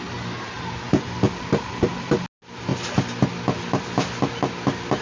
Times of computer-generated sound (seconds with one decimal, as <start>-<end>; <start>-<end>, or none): none